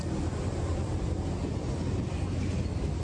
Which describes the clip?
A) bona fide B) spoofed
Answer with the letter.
A